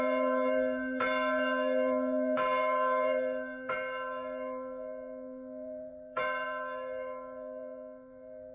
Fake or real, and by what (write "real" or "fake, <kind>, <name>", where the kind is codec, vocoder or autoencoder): fake, vocoder, BigVGAN v2